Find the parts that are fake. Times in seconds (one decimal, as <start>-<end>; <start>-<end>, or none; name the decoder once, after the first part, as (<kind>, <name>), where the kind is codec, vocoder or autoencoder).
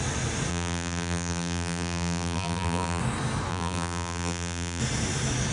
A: 0.5-3.0 (vocoder, BigVGAN v2); 3.5-4.8